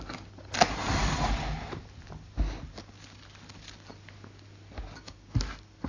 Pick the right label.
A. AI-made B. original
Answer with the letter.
B